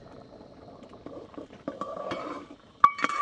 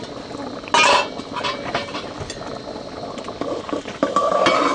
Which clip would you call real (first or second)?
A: second